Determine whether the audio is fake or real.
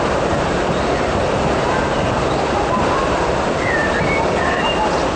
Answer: fake